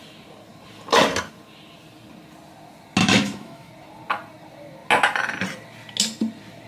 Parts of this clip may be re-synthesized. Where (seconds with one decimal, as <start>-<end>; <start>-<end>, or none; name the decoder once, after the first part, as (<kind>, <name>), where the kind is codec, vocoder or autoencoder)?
3.0-3.7 (autoencoder, DAC-VAE)